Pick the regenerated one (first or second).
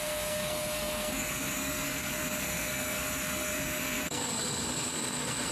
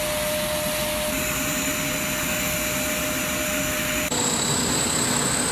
first